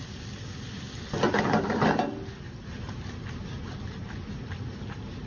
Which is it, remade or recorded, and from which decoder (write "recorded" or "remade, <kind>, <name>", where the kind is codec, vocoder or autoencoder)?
recorded